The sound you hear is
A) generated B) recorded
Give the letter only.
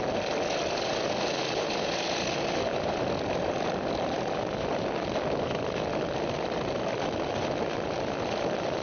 B